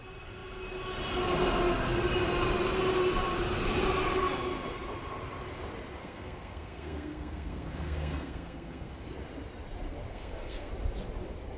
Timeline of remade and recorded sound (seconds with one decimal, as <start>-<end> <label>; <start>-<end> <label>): 0.0-6.0 recorded; 6.0-8.9 remade; 8.9-10.1 recorded; 10.1-10.7 remade; 10.7-11.6 recorded